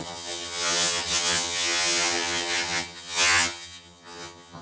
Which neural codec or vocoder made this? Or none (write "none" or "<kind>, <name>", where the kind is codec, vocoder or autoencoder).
vocoder, HiFi-GAN